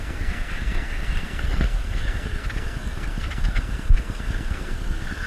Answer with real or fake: fake